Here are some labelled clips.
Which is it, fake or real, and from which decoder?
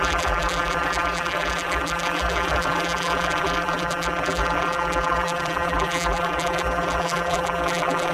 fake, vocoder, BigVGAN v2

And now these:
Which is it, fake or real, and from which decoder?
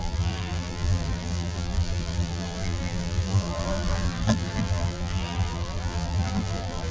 fake, vocoder, BigVGAN v2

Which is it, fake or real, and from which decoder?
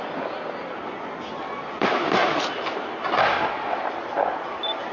real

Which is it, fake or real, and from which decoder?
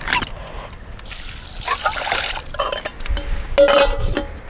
real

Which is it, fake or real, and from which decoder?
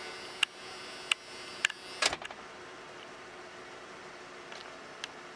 real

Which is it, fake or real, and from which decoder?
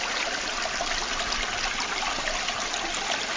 real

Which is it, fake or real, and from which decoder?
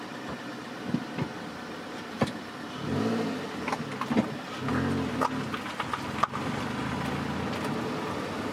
real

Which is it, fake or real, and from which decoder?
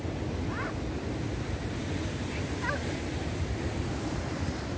real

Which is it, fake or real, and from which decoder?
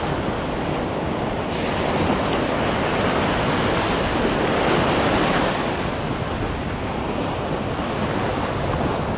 real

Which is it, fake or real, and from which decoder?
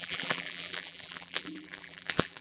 fake, vocoder, BigVGAN v2